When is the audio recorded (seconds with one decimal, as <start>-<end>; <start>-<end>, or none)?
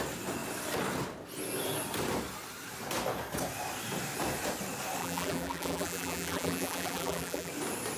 0.0-5.0; 7.5-8.0